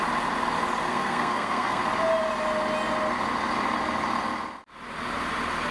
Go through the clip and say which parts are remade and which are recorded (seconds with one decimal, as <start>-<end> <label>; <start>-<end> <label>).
0.0-0.9 recorded; 0.9-1.8 remade; 1.8-5.7 recorded